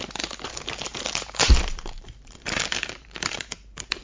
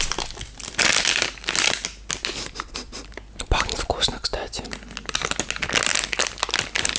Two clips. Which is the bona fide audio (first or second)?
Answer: second